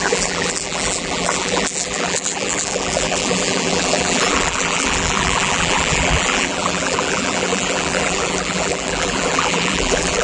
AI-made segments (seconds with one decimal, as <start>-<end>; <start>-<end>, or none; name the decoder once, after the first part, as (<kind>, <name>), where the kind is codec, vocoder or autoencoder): 0.0-10.2 (vocoder, BigVGAN v2)